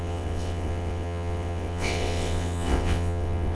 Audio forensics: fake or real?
fake